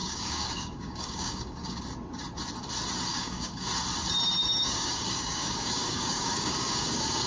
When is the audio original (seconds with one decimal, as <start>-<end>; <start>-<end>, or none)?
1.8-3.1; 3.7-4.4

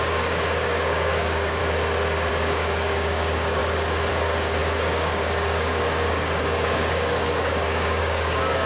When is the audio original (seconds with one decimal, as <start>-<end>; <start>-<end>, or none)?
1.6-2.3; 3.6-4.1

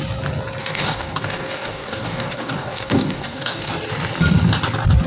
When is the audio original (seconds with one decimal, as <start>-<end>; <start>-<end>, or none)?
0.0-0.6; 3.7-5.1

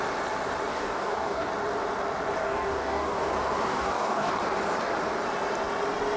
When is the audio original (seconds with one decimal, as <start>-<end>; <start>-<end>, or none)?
0.0-0.7; 1.5-2.4; 3.3-3.7; 4.3-6.2

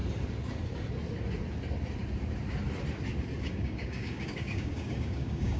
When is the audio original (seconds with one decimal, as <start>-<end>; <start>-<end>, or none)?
0.0-3.4